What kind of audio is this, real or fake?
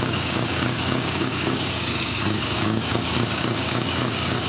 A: fake